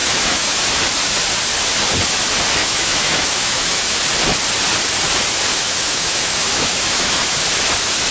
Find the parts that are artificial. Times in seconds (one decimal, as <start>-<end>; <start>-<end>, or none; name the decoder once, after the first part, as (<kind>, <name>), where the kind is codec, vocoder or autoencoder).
0.0-0.8 (autoencoder, DAC-VAE); 2.6-4.0; 5.5-7.4